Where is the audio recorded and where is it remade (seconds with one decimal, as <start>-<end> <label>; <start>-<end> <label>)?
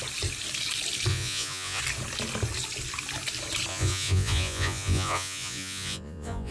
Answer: 0.0-1.1 recorded; 1.1-1.8 remade; 1.8-3.7 recorded; 3.7-6.5 remade